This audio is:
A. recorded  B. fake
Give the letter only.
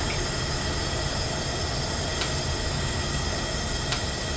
A